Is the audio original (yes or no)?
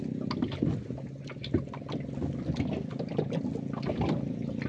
yes